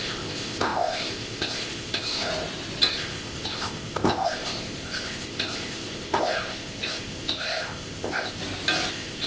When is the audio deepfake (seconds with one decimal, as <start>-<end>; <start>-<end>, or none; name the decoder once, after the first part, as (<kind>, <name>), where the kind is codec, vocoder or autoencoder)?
0.0-2.3 (codec, ZipCodec); 2.9-8.4; 8.9-9.3